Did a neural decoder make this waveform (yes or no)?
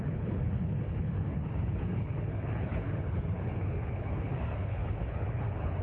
yes